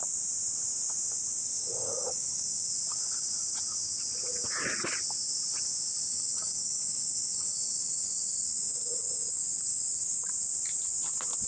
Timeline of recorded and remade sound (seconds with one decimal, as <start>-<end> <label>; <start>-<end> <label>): 0.0-1.4 recorded; 1.4-2.7 remade; 2.7-6.1 recorded; 6.1-10.3 remade; 10.3-11.5 recorded